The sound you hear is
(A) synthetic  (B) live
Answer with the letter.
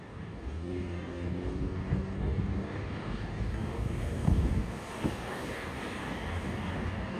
A